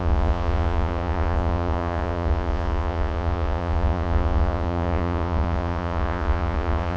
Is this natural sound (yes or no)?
no